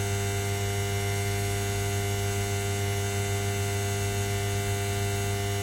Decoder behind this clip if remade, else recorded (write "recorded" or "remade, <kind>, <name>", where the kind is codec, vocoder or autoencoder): recorded